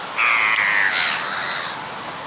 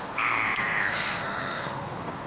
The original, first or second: first